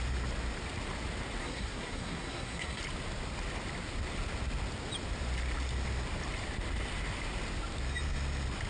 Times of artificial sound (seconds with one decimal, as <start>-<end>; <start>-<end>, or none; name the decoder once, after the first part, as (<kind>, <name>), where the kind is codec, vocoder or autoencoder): 1.4-2.8 (codec, SNAC)